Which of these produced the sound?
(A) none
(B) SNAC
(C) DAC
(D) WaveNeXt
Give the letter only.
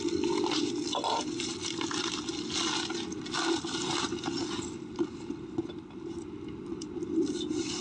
A